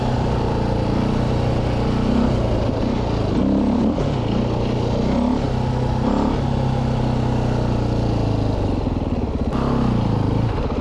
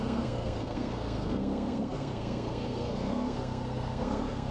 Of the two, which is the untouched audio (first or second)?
first